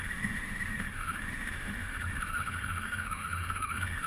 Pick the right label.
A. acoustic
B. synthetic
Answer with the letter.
B